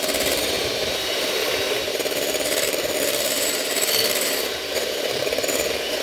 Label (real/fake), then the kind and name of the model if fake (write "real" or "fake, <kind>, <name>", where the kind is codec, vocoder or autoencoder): fake, vocoder, BigVGAN v2